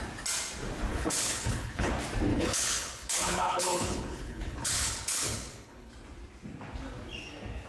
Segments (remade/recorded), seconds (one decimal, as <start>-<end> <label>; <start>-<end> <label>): 0.0-0.9 recorded; 0.9-1.9 remade; 1.9-2.3 recorded; 2.3-5.9 remade; 5.9-7.7 recorded